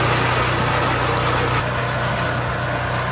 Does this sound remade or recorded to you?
recorded